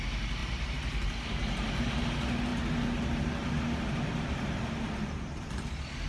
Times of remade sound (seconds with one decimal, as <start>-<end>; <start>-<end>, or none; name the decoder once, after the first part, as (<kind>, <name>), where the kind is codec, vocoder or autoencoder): none